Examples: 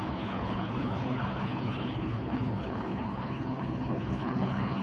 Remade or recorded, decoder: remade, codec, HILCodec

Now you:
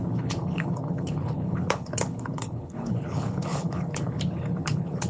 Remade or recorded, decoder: remade, codec, HILCodec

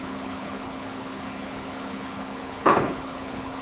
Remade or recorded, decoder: remade, codec, HILCodec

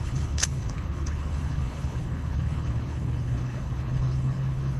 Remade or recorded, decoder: remade, codec, HILCodec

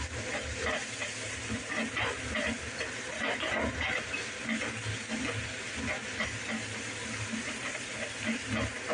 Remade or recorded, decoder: recorded